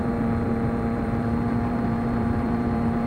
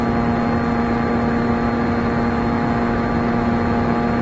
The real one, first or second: second